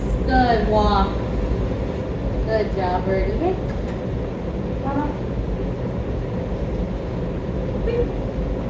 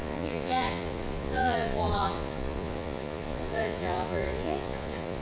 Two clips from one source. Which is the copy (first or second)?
second